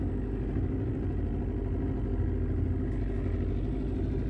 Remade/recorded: recorded